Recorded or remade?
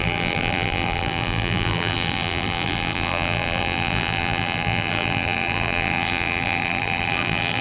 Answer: remade